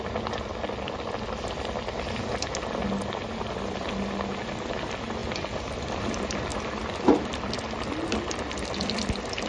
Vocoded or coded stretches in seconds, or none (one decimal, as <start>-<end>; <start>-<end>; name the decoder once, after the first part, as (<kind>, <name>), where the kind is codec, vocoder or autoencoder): none